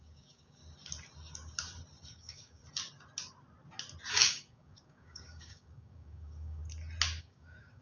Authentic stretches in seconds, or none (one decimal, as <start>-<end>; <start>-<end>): 0.6-2.1; 2.6-4.1; 6.6-7.2

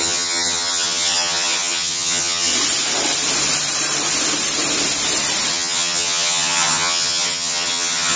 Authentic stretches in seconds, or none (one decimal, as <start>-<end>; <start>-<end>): 2.5-5.5

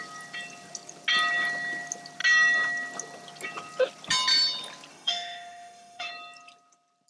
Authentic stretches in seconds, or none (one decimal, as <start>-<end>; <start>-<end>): 0.0-4.9; 6.1-7.1

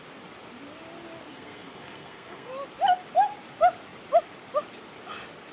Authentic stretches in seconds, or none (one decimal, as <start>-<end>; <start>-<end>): 0.0-1.3; 2.5-5.5

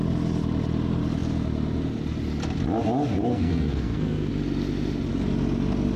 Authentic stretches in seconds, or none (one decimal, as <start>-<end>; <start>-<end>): 0.0-3.3; 4.3-6.0

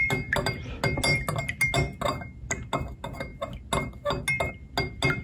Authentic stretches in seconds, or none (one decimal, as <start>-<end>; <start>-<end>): 0.0-5.2

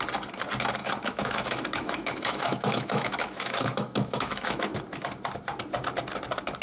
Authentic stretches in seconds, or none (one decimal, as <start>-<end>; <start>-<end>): 0.0-0.8; 4.8-6.6